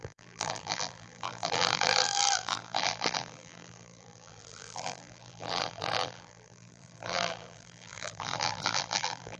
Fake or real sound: fake